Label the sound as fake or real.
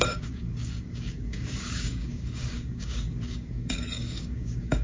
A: fake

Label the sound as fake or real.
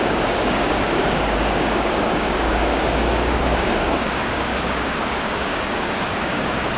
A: fake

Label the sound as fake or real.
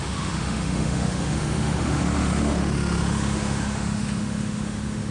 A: fake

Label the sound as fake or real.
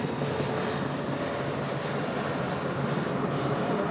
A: real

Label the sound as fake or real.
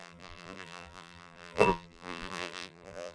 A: fake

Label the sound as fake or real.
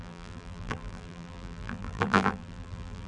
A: fake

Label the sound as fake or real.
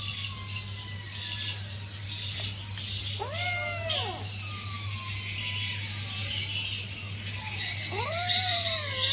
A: real